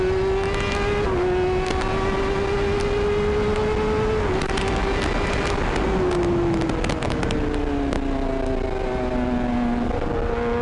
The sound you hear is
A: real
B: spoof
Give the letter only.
A